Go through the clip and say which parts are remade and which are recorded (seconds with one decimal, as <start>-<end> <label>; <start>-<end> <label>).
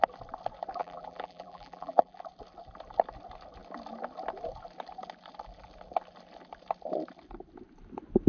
0.0-0.8 recorded; 0.8-2.2 remade; 2.2-8.3 recorded